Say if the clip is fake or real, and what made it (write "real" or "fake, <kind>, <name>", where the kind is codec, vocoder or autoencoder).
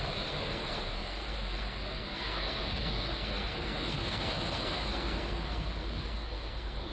fake, codec, SNAC